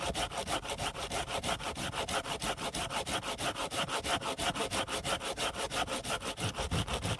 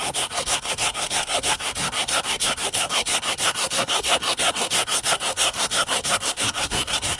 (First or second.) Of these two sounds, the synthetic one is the second